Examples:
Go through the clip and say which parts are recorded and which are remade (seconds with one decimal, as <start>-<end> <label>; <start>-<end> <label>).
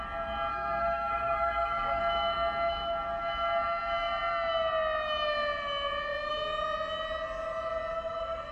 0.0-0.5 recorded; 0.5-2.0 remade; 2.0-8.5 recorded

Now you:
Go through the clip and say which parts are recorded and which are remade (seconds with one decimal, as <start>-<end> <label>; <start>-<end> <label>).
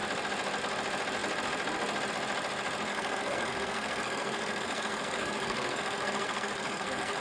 0.0-2.9 recorded; 2.9-7.2 remade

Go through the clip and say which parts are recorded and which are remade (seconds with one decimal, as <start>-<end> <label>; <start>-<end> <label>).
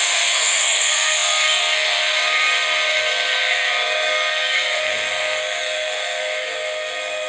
0.0-7.3 remade